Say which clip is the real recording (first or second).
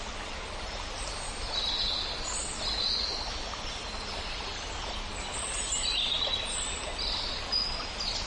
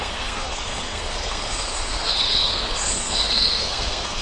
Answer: first